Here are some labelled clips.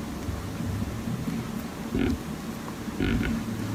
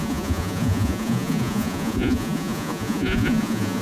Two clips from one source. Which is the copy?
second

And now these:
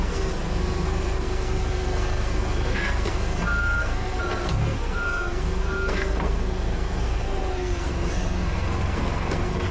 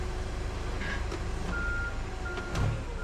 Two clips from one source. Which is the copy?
first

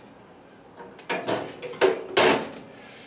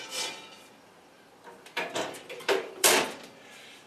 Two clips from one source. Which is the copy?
second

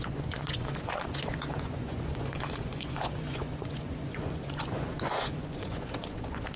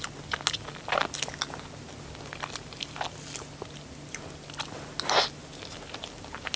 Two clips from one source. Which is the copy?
first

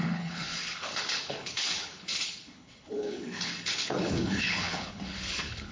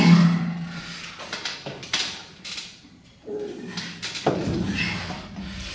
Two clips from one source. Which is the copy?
first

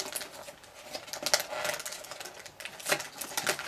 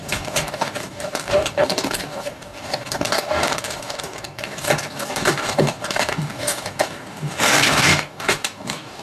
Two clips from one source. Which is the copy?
second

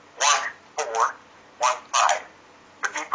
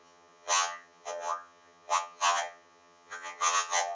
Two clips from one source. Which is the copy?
second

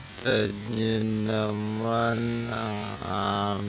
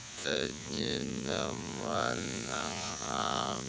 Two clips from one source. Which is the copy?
second